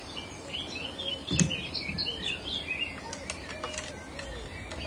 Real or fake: real